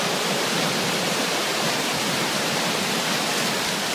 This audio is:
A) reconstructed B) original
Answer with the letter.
B